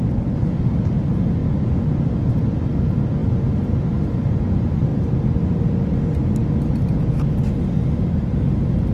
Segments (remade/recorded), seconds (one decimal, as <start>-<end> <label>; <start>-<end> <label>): 0.0-4.9 recorded; 4.9-5.9 remade; 5.9-8.9 recorded